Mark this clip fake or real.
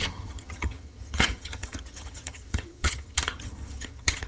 fake